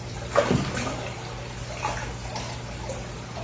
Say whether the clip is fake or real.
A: real